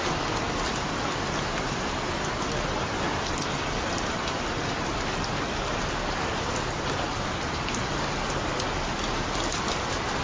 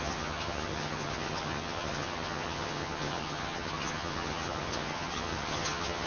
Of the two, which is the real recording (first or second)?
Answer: first